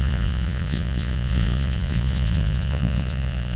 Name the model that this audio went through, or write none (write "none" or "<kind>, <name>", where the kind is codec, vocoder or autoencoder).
vocoder, Vocos